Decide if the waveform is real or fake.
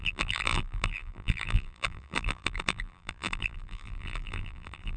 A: fake